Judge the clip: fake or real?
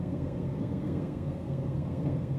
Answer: fake